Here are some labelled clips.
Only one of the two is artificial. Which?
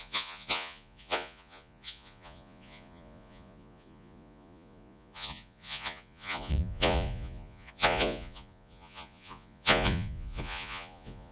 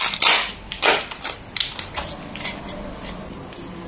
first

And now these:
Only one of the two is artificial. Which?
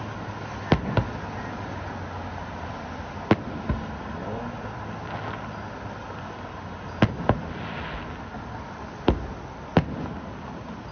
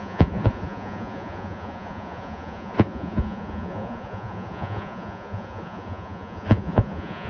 second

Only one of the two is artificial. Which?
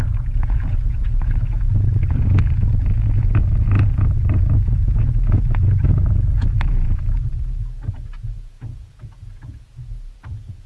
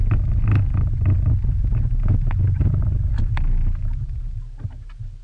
first